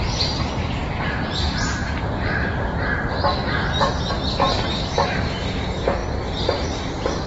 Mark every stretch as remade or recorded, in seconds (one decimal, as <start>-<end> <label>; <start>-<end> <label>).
0.0-7.3 recorded